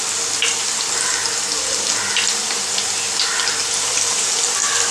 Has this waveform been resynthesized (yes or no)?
no